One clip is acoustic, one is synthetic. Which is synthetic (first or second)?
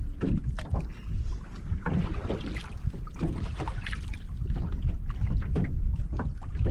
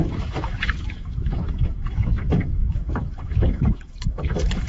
second